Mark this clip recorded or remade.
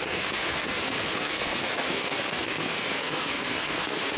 remade